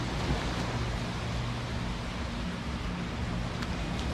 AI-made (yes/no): no